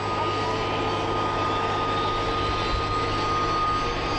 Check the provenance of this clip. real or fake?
real